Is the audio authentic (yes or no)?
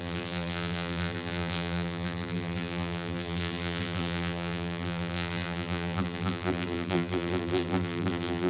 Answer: no